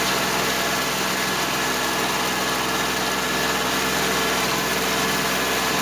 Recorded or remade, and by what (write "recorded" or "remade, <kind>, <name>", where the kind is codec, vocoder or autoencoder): recorded